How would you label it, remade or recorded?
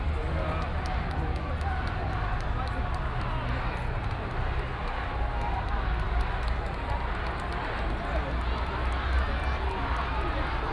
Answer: recorded